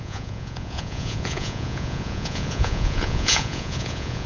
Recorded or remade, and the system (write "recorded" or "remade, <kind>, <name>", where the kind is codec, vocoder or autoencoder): remade, vocoder, Vocos